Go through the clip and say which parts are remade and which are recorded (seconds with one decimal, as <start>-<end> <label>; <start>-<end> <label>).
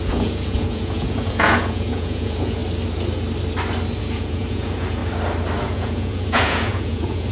0.0-2.6 remade; 2.6-4.0 recorded; 4.0-5.0 remade; 5.0-5.6 recorded; 5.6-7.3 remade